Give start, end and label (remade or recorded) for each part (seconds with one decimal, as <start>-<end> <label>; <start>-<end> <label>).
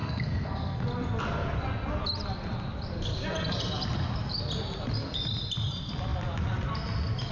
0.0-0.8 remade; 0.8-7.3 recorded